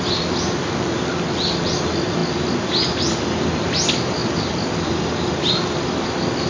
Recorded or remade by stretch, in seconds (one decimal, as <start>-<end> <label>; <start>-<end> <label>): 0.0-6.5 recorded